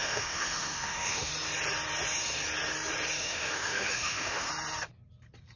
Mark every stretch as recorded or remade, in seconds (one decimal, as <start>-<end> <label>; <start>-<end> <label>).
0.0-1.3 remade; 1.3-3.2 recorded; 3.2-4.5 remade; 4.5-5.6 recorded